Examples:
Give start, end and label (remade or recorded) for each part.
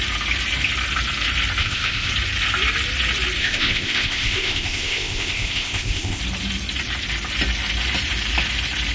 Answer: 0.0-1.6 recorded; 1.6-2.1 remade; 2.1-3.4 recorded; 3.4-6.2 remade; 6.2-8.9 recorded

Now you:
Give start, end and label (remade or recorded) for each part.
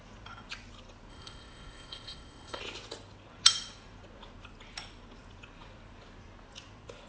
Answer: 0.0-1.1 recorded; 1.1-2.6 remade; 2.6-7.1 recorded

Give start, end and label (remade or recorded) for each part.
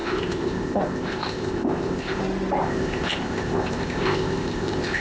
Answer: 0.0-2.2 remade; 2.2-2.6 recorded; 2.6-5.0 remade